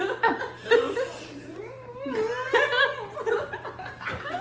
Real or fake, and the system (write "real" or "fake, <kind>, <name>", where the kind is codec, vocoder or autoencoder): real